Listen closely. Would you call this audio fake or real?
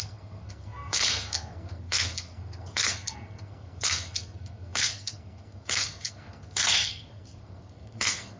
fake